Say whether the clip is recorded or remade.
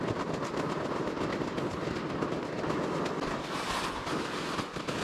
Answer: recorded